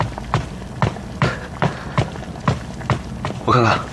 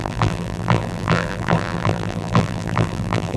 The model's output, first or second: second